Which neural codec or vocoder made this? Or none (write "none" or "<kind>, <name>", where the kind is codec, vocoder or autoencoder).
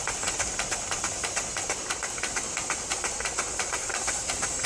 none